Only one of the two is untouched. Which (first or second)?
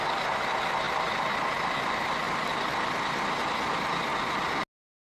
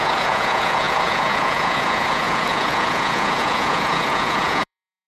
first